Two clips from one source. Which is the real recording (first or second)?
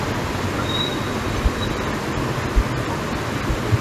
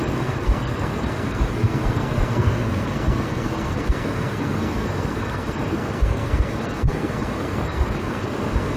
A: first